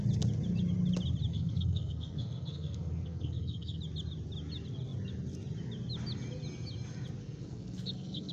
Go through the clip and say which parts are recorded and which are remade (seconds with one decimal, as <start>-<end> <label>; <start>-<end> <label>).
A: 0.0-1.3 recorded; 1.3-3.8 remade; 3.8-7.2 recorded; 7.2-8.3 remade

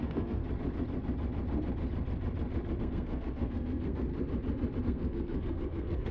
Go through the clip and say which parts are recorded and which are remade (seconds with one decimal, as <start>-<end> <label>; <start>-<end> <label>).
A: 0.0-0.4 remade; 0.4-2.8 recorded; 2.8-4.1 remade; 4.1-4.8 recorded; 4.8-6.1 remade

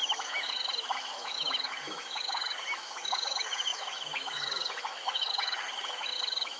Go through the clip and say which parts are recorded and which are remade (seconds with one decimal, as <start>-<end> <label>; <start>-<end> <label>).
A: 0.0-6.6 remade

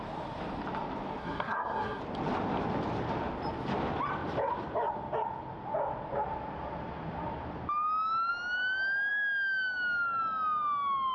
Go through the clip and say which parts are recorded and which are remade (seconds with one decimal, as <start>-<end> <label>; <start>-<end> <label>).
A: 0.0-1.2 recorded; 1.2-2.0 remade; 2.0-11.1 recorded